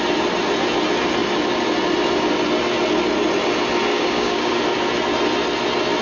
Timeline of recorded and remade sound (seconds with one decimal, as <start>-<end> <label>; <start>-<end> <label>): 0.0-3.9 recorded; 3.9-4.5 remade; 4.5-6.0 recorded